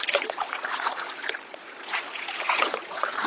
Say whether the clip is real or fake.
fake